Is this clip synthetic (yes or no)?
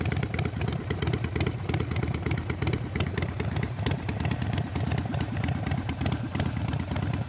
yes